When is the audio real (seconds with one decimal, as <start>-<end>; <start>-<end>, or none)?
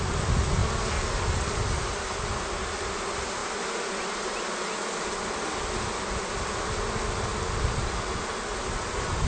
0.0-9.3